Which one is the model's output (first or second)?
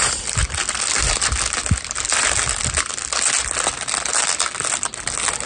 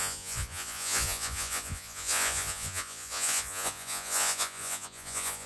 second